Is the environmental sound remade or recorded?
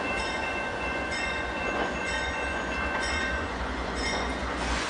remade